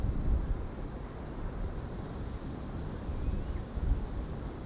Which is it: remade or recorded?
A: recorded